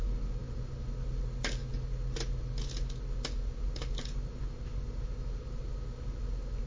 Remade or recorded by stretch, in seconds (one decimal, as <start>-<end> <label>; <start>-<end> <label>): 0.0-6.7 recorded